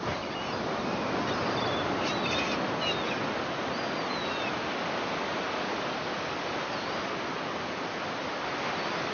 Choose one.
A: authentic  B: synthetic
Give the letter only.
A